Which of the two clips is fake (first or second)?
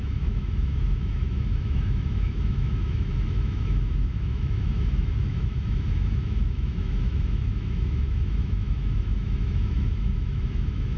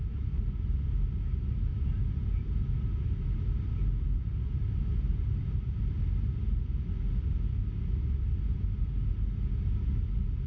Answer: first